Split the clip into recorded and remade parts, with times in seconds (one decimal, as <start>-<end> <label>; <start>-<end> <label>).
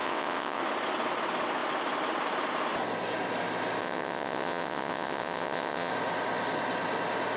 0.0-0.6 remade; 0.6-3.8 recorded; 3.8-5.9 remade; 5.9-7.4 recorded